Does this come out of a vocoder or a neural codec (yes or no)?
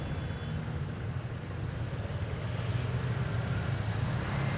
no